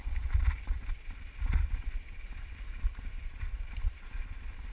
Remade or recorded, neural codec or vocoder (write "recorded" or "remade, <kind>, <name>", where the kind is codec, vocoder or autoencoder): recorded